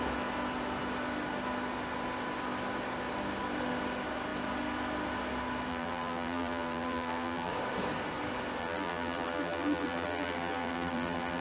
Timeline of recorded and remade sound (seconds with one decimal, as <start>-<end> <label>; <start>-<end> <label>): 0.0-5.7 recorded; 5.7-7.5 remade; 7.5-8.6 recorded; 8.6-11.4 remade